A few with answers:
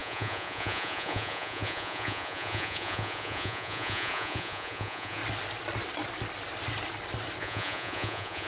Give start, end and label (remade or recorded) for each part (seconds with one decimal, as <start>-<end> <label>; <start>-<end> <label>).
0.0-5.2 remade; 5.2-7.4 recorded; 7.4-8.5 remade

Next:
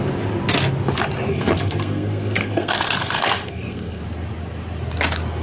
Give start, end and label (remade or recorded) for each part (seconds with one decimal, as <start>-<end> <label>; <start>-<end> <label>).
0.0-1.3 recorded; 1.3-4.0 remade; 4.0-5.4 recorded

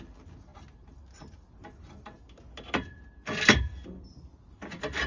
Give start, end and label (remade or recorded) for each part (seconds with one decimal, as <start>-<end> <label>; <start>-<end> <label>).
0.0-5.1 recorded